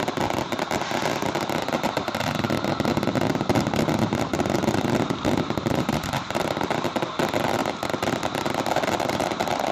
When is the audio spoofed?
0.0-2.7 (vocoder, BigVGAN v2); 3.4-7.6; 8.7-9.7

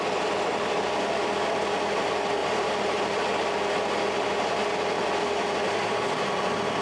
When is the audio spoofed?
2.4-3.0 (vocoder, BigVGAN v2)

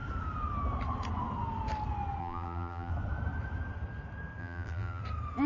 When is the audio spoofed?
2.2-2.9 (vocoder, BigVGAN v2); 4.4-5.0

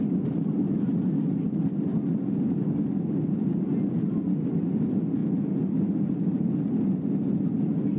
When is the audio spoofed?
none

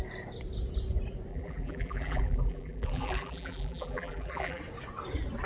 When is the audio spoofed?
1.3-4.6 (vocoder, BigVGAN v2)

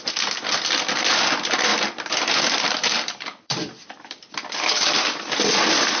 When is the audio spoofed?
1.7-5.3 (vocoder, BigVGAN v2)